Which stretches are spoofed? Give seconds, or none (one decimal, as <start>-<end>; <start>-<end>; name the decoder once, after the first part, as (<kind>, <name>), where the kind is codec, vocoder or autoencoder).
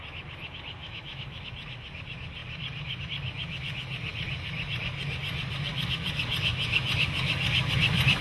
0.8-1.4 (autoencoder, DAC-VAE)